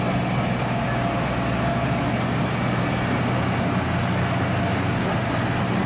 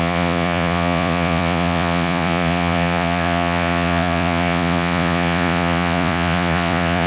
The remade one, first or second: second